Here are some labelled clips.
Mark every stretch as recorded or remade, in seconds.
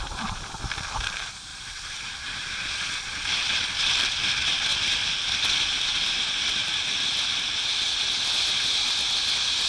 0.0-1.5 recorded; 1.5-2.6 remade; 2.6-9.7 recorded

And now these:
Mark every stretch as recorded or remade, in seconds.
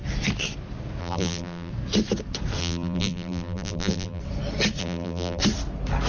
0.0-1.0 recorded; 1.0-1.7 remade; 1.7-2.6 recorded; 2.6-4.2 remade; 4.2-4.8 recorded; 4.8-5.4 remade; 5.4-6.1 recorded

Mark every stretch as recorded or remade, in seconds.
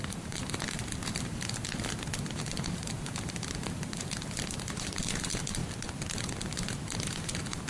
0.0-5.6 remade; 5.6-6.4 recorded; 6.4-7.7 remade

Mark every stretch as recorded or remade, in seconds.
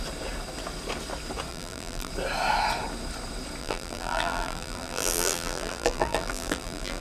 0.0-1.5 recorded; 1.5-2.1 remade; 2.1-3.6 recorded; 3.6-7.0 remade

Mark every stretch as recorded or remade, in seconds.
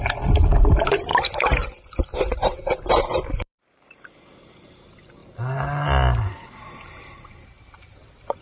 0.0-5.2 remade; 5.2-6.6 recorded; 6.6-8.4 remade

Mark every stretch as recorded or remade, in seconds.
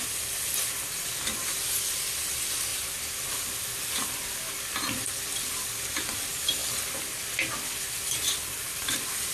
0.0-2.7 recorded; 2.7-3.3 remade; 3.3-9.3 recorded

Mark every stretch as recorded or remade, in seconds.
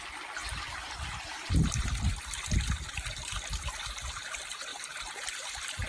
0.0-0.4 recorded; 0.4-3.3 remade; 3.3-5.9 recorded